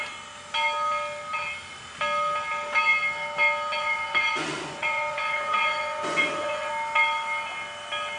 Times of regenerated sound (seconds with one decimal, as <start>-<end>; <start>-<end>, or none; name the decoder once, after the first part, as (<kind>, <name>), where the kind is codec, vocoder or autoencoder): 3.7-6.7 (vocoder, Vocos)